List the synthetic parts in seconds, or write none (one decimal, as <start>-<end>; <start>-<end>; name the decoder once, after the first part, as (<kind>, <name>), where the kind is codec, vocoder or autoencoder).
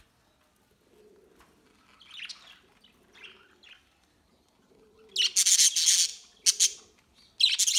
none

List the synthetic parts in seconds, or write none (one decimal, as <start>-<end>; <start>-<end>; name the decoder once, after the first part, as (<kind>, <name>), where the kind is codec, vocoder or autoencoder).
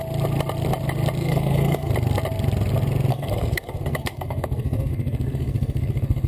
1.2-1.9 (codec, SNAC); 3.1-6.3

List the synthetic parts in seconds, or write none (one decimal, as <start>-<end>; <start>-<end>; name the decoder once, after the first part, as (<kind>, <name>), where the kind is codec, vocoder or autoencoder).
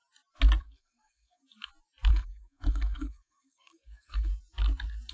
0.6-1.4 (codec, SNAC); 2.1-4.3